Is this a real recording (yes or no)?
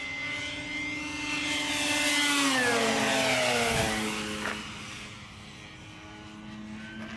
yes